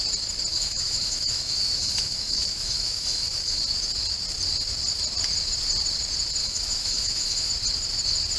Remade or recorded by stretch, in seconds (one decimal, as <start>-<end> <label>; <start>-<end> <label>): 0.0-0.5 recorded; 0.5-3.6 remade; 3.6-6.4 recorded; 6.4-7.5 remade; 7.5-8.4 recorded